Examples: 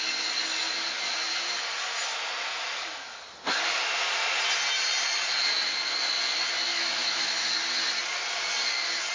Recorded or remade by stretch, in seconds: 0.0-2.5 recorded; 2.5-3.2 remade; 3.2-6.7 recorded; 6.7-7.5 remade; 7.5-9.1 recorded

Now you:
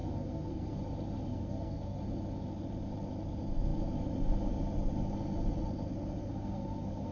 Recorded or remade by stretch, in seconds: 0.0-0.8 remade; 0.8-1.3 recorded; 1.3-2.0 remade; 2.0-6.2 recorded; 6.2-7.1 remade

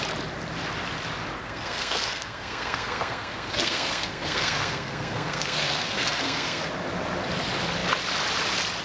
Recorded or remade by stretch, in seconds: 0.0-1.4 recorded; 1.4-6.7 remade; 6.7-8.8 recorded

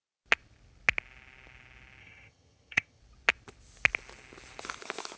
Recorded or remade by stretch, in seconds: 0.0-2.0 recorded; 2.0-3.0 remade; 3.0-5.2 recorded

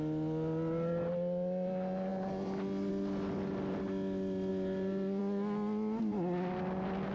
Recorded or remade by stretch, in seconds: 0.0-2.1 recorded; 2.1-2.9 remade; 2.9-7.1 recorded